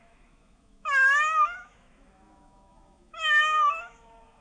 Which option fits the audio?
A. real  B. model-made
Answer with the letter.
B